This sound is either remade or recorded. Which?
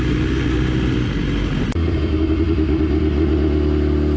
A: recorded